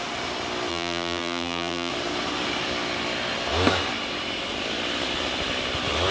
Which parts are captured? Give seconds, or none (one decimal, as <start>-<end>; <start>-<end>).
0.0-0.7; 1.9-6.1